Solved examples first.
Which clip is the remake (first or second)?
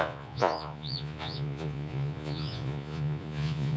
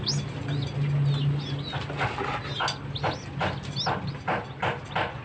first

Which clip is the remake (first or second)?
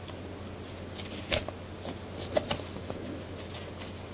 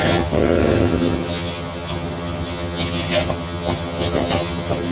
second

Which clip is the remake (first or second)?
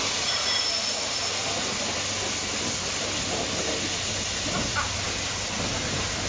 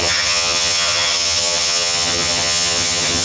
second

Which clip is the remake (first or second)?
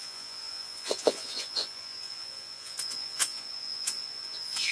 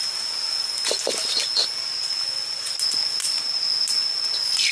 first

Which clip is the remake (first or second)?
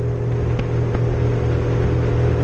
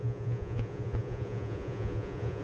second